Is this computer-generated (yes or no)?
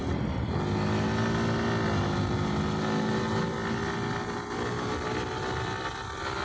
no